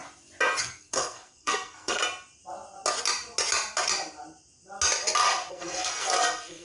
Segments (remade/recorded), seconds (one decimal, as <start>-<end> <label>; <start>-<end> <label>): 0.0-0.6 recorded; 0.6-2.0 remade; 2.0-5.5 recorded; 5.5-6.6 remade